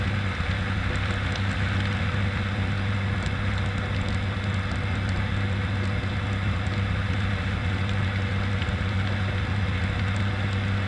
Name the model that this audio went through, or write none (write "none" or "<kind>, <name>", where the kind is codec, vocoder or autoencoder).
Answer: none